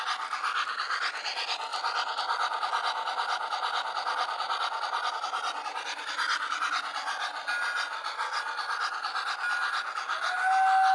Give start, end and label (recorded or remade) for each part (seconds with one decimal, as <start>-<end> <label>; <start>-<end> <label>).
0.0-10.9 recorded